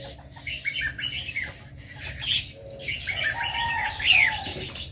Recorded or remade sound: recorded